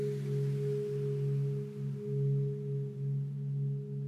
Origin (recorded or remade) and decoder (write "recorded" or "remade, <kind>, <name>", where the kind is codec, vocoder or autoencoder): recorded